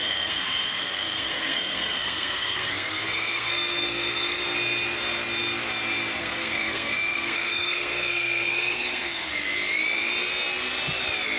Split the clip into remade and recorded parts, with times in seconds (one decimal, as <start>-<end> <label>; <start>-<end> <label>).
0.0-4.4 remade; 4.4-6.2 recorded; 6.2-9.3 remade; 9.3-11.4 recorded